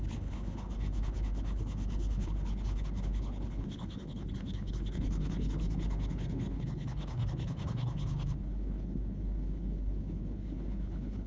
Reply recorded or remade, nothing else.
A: remade